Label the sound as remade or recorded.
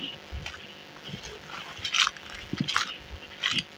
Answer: recorded